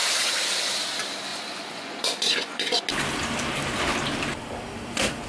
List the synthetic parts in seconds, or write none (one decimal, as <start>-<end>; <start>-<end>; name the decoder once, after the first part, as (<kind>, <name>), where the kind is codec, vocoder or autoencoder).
1.3-2.8 (vocoder, Vocos)